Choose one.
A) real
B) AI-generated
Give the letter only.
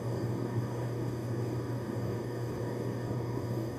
B